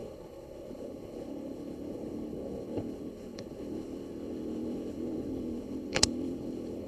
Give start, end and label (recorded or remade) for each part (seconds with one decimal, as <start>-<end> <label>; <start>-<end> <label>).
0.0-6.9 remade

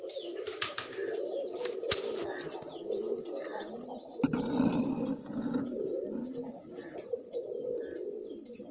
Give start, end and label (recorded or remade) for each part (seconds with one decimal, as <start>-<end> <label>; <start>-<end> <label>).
0.0-8.7 recorded

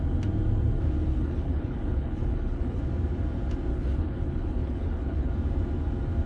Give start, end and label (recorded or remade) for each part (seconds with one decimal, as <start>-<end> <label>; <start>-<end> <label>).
0.0-1.1 recorded; 1.1-2.8 remade; 2.8-3.7 recorded; 3.7-5.3 remade; 5.3-6.3 recorded

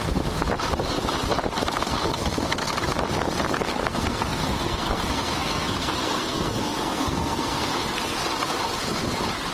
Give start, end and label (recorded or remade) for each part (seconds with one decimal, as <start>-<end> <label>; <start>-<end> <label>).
0.0-0.4 remade; 0.4-1.7 recorded; 1.7-2.6 remade; 2.6-3.5 recorded; 3.5-7.7 remade; 7.7-9.5 recorded